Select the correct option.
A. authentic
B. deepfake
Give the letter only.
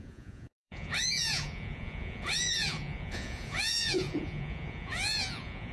B